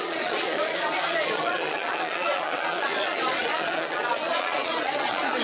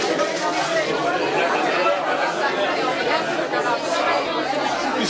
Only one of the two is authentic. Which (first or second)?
second